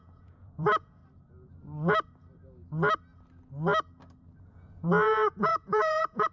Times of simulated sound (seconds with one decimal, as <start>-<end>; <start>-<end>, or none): 0.0-1.0; 4.4-6.3